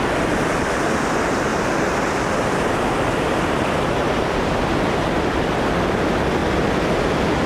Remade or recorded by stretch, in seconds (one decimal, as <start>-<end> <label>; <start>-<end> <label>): 0.0-7.5 recorded